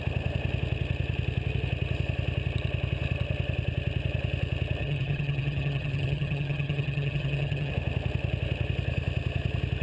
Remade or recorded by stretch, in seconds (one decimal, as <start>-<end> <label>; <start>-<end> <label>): 0.0-4.8 recorded; 4.8-7.7 remade; 7.7-9.8 recorded